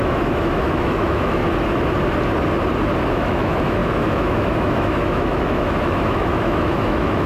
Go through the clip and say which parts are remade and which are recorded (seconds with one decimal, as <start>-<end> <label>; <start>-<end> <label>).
0.0-1.4 remade; 1.4-3.1 recorded; 3.1-7.3 remade